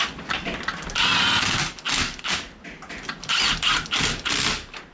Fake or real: real